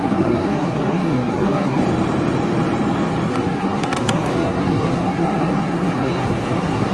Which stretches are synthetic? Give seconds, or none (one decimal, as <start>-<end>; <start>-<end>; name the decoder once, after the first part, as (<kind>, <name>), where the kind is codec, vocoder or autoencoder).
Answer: 0.0-1.8 (codec, SNAC); 3.3-6.9